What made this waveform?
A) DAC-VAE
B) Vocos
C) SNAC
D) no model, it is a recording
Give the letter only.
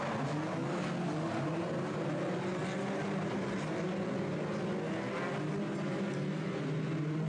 D